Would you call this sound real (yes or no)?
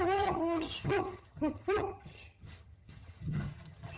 no